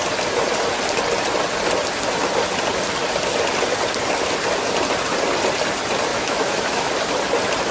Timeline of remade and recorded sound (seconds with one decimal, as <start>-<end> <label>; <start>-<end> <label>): 0.0-6.1 recorded; 6.1-6.9 remade; 6.9-7.7 recorded